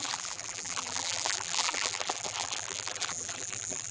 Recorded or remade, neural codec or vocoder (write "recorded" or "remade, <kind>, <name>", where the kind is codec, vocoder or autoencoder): remade, vocoder, BigVGAN v2